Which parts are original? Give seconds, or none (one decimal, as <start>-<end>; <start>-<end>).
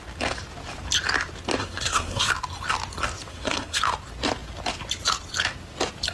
0.0-1.6; 2.3-3.3; 3.8-6.1